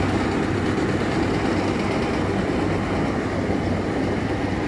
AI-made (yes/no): no